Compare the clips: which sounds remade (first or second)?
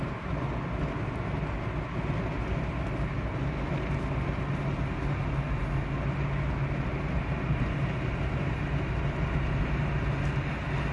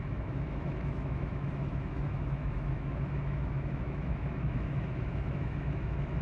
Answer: second